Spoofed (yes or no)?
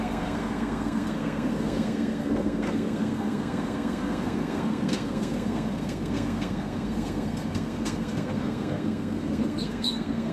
yes